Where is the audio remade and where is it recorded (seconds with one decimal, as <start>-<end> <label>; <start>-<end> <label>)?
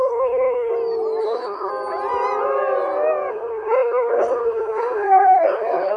0.0-0.7 remade; 0.7-1.2 recorded; 1.2-1.7 remade; 1.7-3.3 recorded; 3.3-6.0 remade